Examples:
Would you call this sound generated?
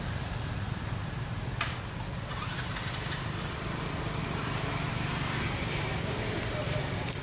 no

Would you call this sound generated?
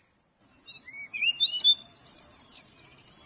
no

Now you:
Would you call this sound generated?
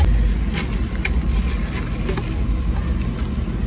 no